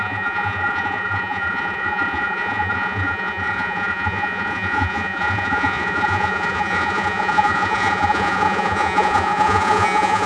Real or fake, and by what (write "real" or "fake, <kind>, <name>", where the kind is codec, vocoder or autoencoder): fake, vocoder, Vocos